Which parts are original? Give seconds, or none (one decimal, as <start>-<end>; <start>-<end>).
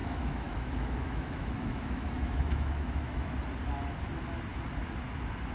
3.3-5.5